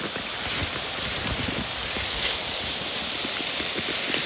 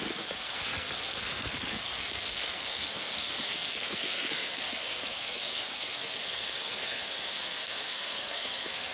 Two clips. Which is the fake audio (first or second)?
second